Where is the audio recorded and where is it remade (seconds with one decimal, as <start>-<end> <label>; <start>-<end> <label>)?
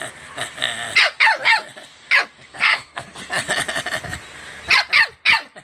0.0-2.5 recorded; 2.5-3.2 remade; 3.2-5.6 recorded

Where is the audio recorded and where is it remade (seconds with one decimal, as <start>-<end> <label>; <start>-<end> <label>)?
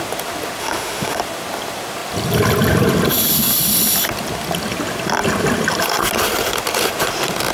0.0-0.6 recorded; 0.6-1.2 remade; 1.2-7.5 recorded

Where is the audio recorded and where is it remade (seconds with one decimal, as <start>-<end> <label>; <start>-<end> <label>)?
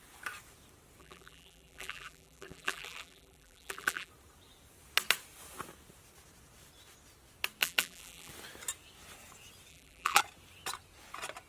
0.0-1.0 recorded; 1.0-4.1 remade; 4.1-7.6 recorded; 7.6-8.3 remade; 8.3-9.7 recorded; 9.7-10.2 remade; 10.2-11.5 recorded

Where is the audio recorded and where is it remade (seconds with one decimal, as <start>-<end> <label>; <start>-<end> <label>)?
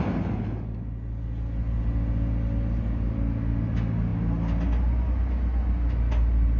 0.0-6.6 recorded